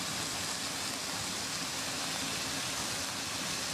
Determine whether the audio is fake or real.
real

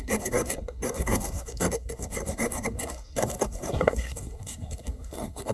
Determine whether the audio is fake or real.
fake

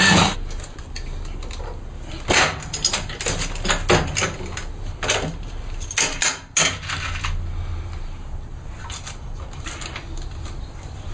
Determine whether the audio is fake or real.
real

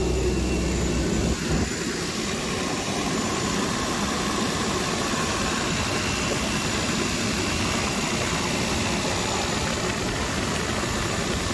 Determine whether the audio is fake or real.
real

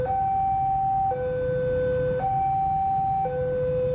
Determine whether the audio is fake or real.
real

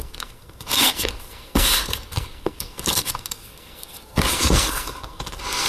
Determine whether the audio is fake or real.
fake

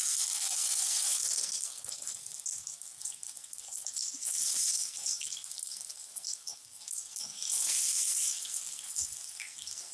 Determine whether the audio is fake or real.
fake